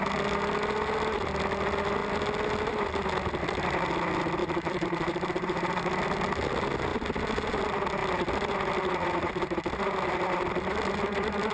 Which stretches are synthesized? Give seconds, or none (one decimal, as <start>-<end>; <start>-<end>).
4.4-5.9